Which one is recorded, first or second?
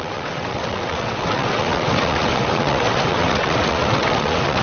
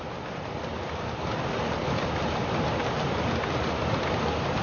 second